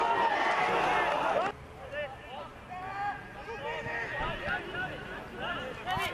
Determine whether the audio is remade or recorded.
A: recorded